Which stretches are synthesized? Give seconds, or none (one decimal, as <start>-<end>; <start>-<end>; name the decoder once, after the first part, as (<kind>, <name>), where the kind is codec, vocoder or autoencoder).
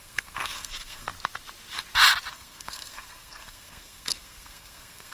0.0-1.1 (codec, SNAC); 2.3-5.1